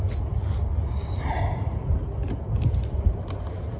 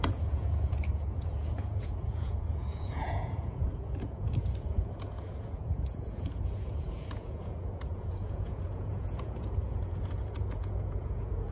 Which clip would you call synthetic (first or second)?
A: second